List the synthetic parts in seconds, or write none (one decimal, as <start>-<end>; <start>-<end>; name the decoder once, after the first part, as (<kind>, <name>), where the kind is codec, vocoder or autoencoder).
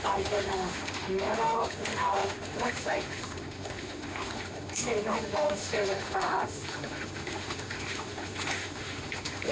0.0-9.5 (autoencoder, DAC-VAE)